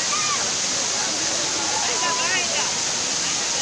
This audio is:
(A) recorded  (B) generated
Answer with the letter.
A